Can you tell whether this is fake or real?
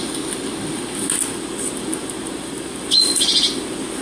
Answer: real